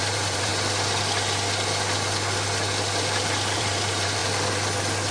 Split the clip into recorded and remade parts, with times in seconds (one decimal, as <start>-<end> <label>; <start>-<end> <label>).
0.0-0.5 remade; 0.5-3.6 recorded; 3.6-4.2 remade; 4.2-5.1 recorded